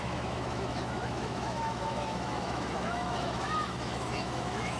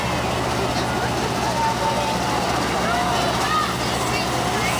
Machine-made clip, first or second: first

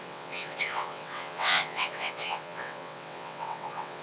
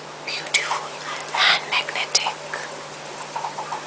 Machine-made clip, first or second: first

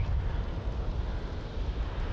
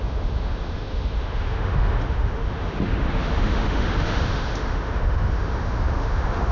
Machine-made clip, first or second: second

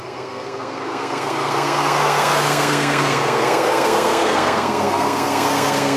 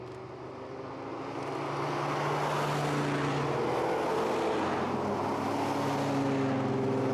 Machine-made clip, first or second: first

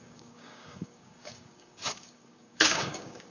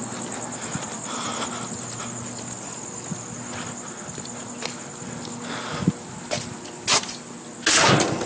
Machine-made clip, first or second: first